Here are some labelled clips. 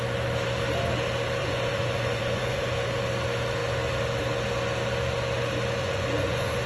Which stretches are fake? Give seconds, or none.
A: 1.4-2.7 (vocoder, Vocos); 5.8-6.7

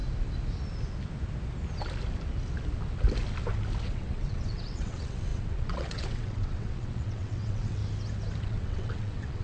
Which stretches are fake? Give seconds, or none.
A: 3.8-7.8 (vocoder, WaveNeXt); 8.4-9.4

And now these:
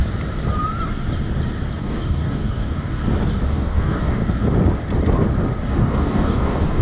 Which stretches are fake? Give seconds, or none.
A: 1.8-3.0 (codec, DAC); 3.5-4.2; 5.6-6.8

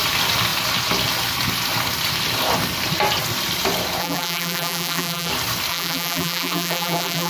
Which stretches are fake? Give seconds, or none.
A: 4.0-5.3 (vocoder, BigVGAN v2); 5.7-7.3

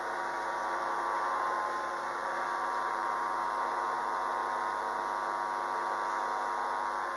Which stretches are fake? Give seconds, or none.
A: 0.0-4.4 (vocoder, BigVGAN v2)

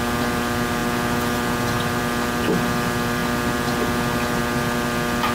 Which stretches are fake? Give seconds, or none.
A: none